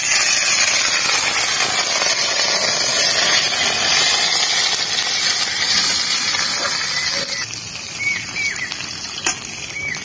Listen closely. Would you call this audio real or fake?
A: real